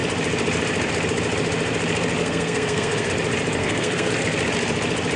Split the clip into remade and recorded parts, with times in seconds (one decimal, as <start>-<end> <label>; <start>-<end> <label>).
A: 0.0-2.2 recorded; 2.2-3.1 remade; 3.1-3.6 recorded; 3.6-4.1 remade; 4.1-5.2 recorded